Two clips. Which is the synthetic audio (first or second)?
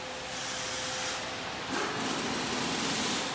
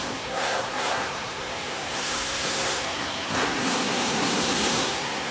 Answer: second